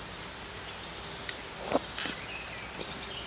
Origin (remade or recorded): recorded